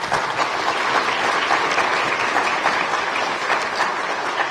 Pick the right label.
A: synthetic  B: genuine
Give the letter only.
B